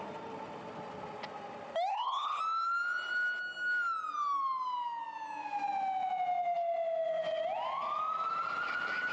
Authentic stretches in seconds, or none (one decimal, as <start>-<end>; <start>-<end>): 0.0-1.9; 2.4-9.1